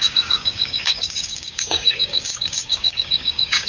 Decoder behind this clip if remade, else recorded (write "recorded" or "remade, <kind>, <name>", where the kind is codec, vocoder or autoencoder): remade, codec, DAC